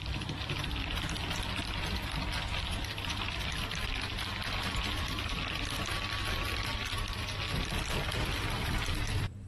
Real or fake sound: fake